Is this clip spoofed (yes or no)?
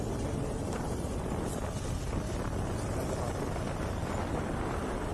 no